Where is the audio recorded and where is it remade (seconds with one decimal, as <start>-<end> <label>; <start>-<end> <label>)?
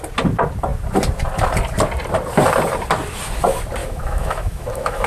0.0-3.8 recorded; 3.8-5.1 remade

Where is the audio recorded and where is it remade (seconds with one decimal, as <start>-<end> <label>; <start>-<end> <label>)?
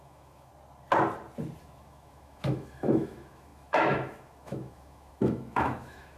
0.0-0.5 remade; 0.5-1.6 recorded; 1.6-6.2 remade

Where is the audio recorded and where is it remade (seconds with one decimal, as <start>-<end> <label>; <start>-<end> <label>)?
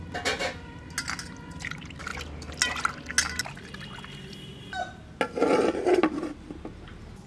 0.0-7.3 recorded